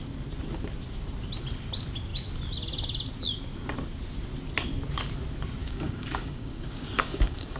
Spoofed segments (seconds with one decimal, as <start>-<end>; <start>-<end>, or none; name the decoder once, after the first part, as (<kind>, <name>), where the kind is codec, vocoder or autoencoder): 5.6-7.6 (codec, DAC)